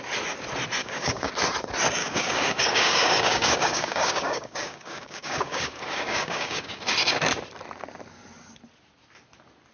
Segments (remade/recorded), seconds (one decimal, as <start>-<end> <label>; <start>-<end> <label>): 0.0-0.8 recorded; 0.8-1.3 remade; 1.3-2.0 recorded; 2.0-6.8 remade; 6.8-9.7 recorded